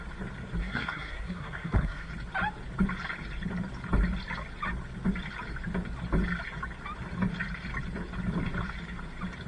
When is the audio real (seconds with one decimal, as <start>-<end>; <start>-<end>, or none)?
0.0-0.6; 2.1-9.5

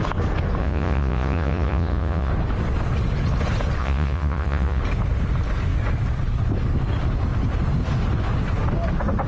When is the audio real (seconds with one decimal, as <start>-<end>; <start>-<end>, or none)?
0.0-0.6; 2.3-3.8; 4.8-9.3

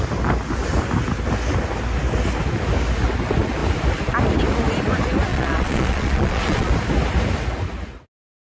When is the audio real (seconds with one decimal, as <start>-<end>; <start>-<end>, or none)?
0.0-5.3; 6.7-8.4